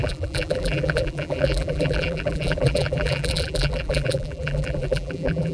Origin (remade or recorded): remade